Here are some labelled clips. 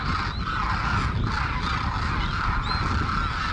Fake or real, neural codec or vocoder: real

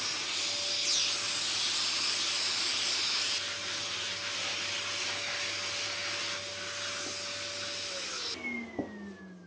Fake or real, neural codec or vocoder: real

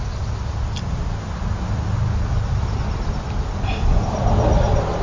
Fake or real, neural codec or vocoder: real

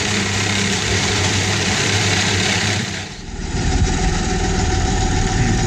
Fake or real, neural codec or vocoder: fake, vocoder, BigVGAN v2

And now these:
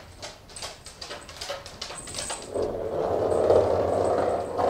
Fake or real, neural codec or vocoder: real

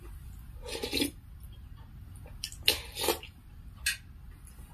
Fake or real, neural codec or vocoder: real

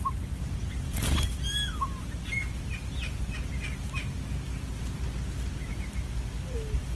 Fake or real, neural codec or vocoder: real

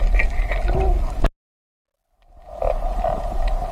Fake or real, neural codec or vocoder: real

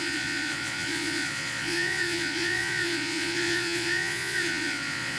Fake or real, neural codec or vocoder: fake, vocoder, Vocos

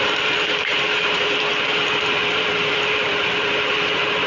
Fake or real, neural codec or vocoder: fake, vocoder, BigVGAN v2